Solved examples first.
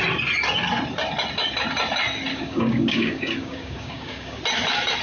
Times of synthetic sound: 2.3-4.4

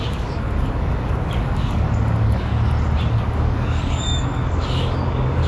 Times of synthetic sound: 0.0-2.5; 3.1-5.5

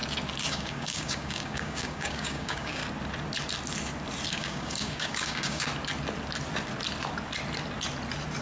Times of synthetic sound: 0.5-2.8; 4.3-5.7

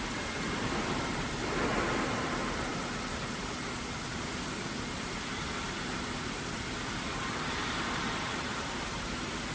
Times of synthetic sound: none